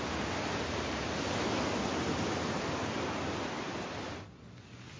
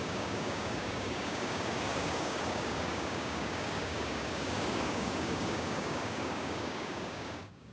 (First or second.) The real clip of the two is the first